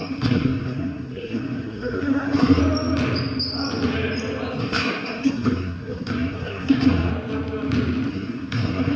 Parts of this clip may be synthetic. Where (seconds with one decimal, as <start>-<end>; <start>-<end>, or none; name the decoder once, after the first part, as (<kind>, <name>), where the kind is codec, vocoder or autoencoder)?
0.0-2.6 (codec, SNAC); 4.6-7.1; 8.1-9.0